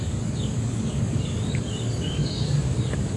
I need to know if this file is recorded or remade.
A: remade